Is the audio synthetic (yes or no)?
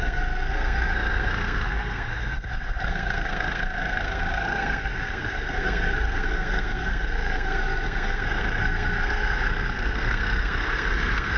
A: yes